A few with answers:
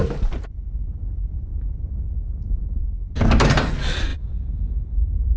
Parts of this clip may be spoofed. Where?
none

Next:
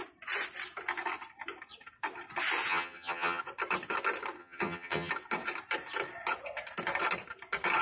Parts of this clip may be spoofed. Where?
2.7-3.4; 4.4-5.1

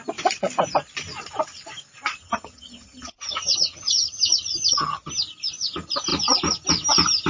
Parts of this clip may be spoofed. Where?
2.2-5.1

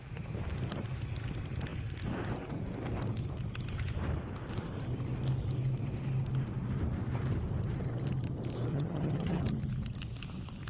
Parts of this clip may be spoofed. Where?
8.7-9.4

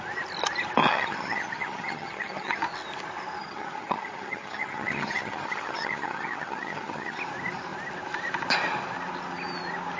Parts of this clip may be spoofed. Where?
0.8-2.6; 3.4-7.2

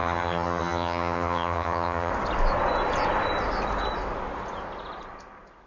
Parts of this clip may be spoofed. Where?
0.0-2.1

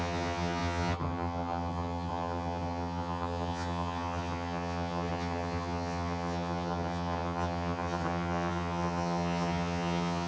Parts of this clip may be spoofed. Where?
0.0-10.3

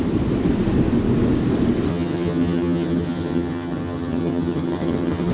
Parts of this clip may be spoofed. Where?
1.9-5.3